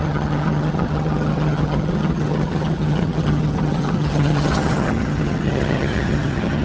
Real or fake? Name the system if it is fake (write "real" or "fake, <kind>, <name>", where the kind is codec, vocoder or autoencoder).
fake, vocoder, HiFi-GAN